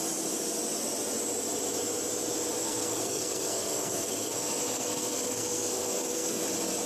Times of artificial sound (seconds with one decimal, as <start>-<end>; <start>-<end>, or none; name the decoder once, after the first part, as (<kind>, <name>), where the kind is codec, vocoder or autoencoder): 2.6-6.4 (codec, SNAC)